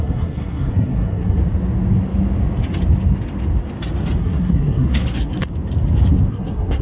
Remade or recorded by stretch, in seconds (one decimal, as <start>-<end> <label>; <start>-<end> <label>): 0.0-1.4 remade; 1.4-4.2 recorded; 4.2-5.4 remade; 5.4-6.3 recorded; 6.3-6.8 remade